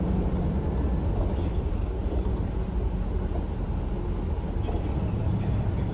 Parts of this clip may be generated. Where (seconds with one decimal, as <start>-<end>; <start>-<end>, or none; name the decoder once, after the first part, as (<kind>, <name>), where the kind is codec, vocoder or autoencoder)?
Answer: 2.0-3.8 (vocoder, BigVGAN v2); 5.2-5.9